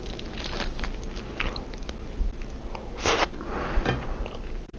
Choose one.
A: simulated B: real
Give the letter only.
B